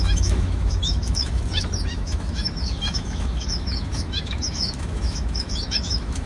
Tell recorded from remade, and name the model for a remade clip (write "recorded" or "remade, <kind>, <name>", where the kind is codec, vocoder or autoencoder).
remade, autoencoder, DAC-VAE